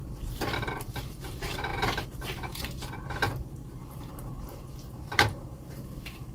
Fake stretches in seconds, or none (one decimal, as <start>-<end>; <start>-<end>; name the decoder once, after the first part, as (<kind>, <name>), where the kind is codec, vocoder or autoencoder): 0.0-6.3 (vocoder, BigVGAN v2)